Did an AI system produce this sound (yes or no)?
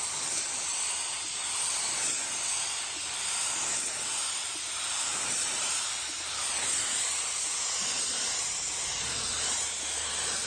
no